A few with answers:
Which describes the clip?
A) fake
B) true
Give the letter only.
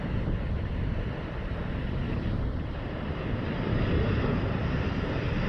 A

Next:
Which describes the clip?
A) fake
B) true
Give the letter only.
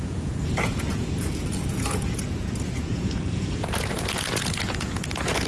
A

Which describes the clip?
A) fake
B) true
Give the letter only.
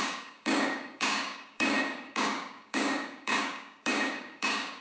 A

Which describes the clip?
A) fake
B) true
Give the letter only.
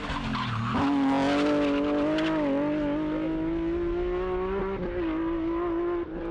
B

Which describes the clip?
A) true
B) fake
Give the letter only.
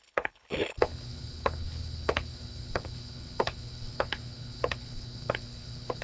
B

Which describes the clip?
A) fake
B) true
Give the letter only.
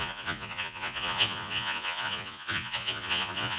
A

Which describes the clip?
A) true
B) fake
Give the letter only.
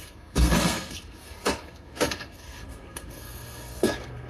B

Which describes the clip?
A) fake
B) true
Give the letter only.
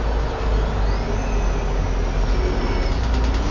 B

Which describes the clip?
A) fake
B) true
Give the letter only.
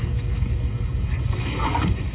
A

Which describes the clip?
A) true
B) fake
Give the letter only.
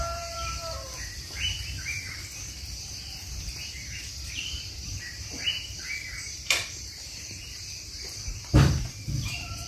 B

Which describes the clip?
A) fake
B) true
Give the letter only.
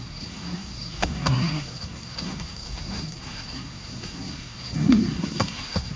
A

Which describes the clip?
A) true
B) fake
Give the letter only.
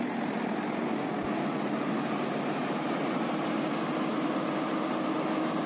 A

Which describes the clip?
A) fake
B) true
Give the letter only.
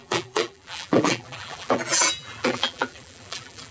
A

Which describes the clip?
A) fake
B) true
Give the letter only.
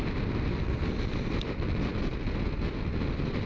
B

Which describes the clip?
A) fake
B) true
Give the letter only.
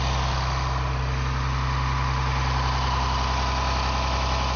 B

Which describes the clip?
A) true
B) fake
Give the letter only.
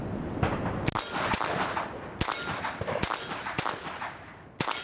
A